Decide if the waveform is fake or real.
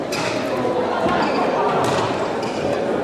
real